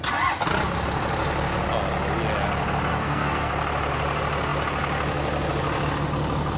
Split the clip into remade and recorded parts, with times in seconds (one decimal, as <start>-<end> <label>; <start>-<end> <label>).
0.0-2.9 recorded; 2.9-3.5 remade; 3.5-6.6 recorded

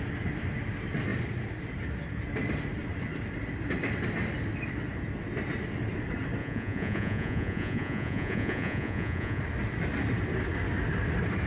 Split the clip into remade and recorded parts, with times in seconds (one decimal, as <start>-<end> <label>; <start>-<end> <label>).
0.0-6.4 recorded; 6.4-9.4 remade; 9.4-11.5 recorded

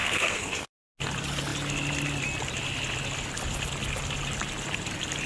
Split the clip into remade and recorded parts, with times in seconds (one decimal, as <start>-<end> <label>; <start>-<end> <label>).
0.0-0.7 remade; 0.7-5.3 recorded

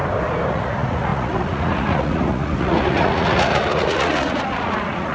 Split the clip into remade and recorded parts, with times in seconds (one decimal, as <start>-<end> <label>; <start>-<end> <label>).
0.0-0.5 recorded; 0.5-5.1 remade